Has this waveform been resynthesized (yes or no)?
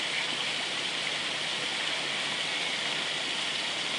no